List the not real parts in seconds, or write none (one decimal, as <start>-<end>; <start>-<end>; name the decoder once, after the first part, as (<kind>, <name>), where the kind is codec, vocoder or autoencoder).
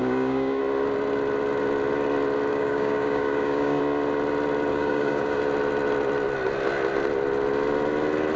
0.0-0.6 (codec, DAC); 2.5-3.8; 4.7-5.4